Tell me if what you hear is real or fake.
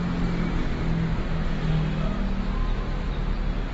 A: real